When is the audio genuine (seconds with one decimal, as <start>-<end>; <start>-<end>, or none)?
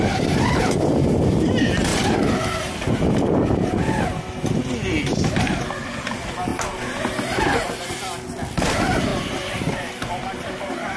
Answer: 0.0-11.0